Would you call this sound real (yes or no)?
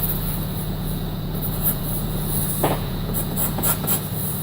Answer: no